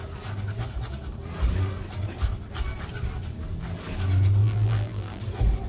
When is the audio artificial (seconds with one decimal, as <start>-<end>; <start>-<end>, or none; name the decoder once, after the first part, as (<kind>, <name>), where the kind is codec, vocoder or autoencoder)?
4.4-5.2 (vocoder, BigVGAN v2)